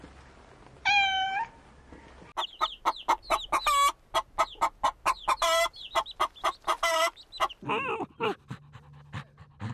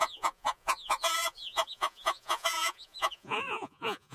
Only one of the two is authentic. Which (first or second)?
first